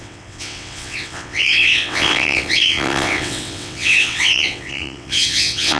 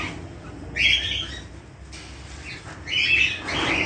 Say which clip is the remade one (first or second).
first